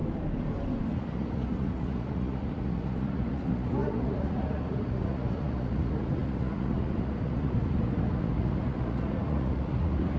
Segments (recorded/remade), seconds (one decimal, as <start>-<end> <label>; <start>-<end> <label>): 0.0-0.9 recorded; 0.9-10.2 remade